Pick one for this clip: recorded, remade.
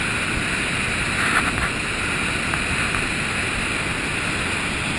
recorded